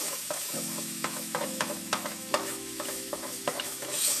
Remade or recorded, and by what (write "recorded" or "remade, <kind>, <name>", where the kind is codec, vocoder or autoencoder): remade, autoencoder, DAC-VAE